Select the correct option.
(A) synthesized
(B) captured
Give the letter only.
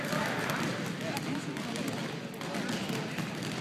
B